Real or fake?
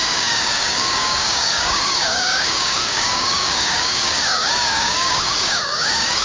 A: fake